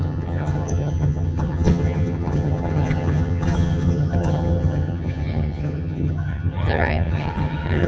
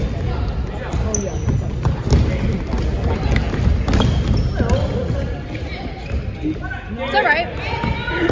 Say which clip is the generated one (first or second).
first